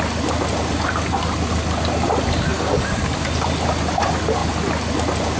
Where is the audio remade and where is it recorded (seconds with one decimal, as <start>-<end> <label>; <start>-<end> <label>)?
0.0-5.4 recorded